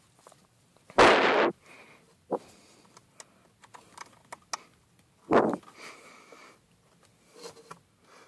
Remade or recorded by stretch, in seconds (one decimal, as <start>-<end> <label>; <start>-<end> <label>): 0.0-8.3 recorded